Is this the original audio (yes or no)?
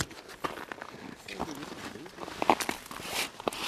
no